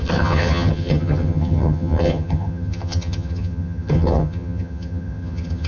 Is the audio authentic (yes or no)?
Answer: no